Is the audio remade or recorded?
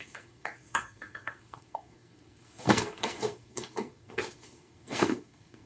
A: remade